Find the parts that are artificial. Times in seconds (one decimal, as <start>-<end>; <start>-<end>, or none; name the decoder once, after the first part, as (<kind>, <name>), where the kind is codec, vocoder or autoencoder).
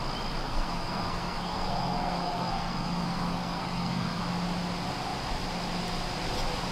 0.4-4.2 (codec, SNAC)